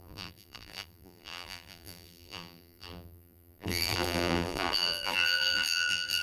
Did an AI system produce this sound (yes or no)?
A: yes